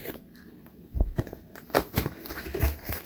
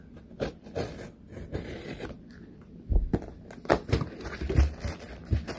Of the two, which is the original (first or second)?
second